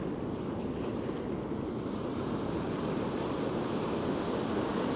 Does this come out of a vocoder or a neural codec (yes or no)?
no